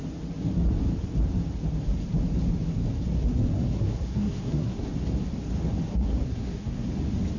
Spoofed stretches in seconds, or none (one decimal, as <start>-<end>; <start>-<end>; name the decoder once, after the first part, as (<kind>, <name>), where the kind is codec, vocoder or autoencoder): 3.5-4.9 (codec, SNAC); 5.9-6.9